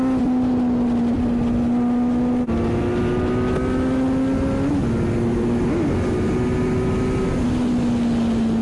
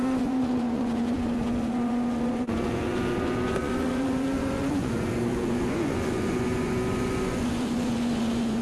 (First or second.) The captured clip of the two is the first